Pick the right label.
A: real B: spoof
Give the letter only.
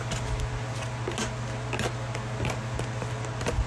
A